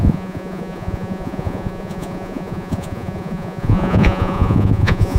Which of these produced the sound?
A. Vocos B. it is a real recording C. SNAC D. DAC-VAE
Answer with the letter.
A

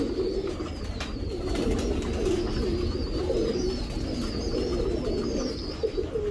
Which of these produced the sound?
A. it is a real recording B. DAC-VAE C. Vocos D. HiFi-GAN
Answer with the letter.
A